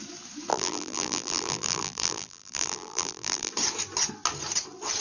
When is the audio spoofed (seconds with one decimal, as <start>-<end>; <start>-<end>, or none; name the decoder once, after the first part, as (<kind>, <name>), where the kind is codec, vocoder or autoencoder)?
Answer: 0.5-3.5 (vocoder, BigVGAN v2)